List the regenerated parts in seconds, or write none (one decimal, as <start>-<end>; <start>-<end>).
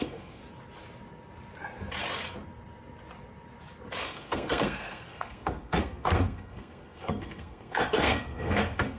0.0-0.4; 4.0-9.0